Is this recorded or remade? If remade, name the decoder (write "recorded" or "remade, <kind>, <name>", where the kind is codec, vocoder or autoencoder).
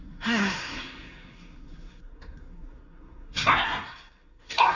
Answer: remade, codec, SNAC